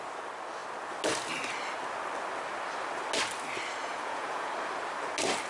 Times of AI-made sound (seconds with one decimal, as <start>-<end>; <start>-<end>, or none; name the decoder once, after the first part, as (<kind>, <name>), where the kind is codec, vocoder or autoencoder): 3.8-4.5 (vocoder, Vocos)